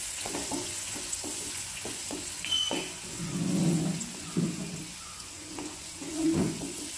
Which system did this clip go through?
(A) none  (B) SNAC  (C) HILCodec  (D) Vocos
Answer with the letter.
D